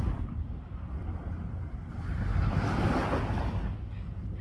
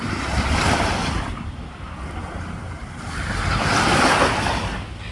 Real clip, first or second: first